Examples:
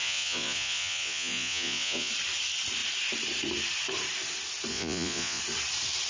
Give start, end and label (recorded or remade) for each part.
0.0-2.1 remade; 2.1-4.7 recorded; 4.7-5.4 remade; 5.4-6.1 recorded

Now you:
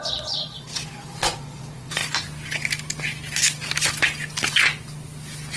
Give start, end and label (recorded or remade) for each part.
0.0-2.0 remade; 2.0-5.6 recorded

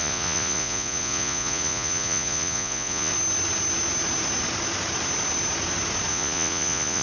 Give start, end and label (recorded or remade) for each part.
0.0-3.1 remade; 3.1-6.1 recorded; 6.1-7.0 remade

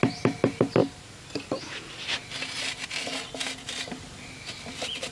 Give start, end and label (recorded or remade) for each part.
0.0-5.1 recorded

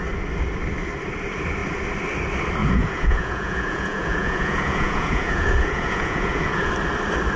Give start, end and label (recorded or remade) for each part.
0.0-2.6 recorded; 2.6-6.7 remade; 6.7-7.4 recorded

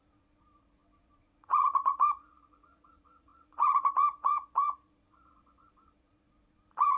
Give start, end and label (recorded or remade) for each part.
0.0-7.0 remade